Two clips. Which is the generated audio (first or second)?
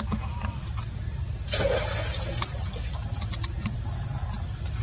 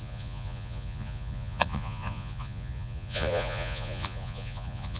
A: second